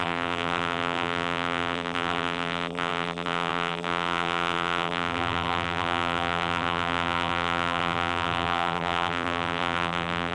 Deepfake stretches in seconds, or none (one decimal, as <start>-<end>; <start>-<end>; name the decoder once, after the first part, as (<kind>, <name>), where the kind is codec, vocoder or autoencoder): 0.0-10.3 (vocoder, BigVGAN v2)